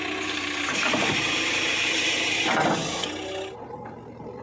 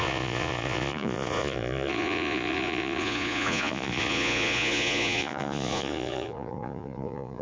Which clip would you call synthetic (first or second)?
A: second